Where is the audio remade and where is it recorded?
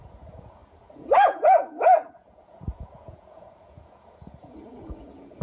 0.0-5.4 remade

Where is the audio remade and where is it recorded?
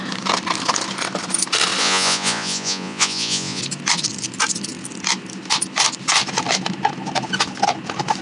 0.0-1.8 recorded; 1.8-3.6 remade; 3.6-8.2 recorded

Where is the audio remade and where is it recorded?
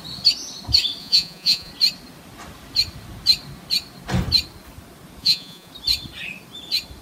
0.0-1.0 recorded; 1.0-1.7 remade; 1.7-5.2 recorded; 5.2-5.7 remade; 5.7-7.0 recorded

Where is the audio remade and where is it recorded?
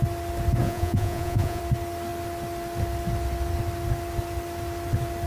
0.0-0.6 recorded; 0.6-1.6 remade; 1.6-5.3 recorded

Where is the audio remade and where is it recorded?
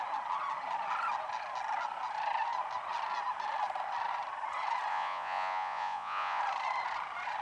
0.0-4.9 recorded; 4.9-6.4 remade; 6.4-7.4 recorded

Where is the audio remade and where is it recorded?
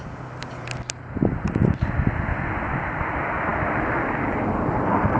0.0-5.2 recorded